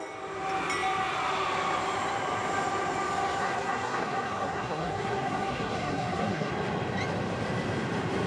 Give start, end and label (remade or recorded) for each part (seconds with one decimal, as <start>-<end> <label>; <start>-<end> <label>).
0.0-3.4 recorded; 3.4-6.5 remade; 6.5-8.3 recorded